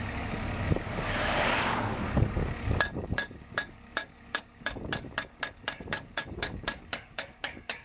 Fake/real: fake